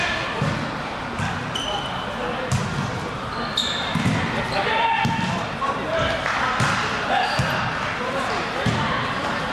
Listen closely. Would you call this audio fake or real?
fake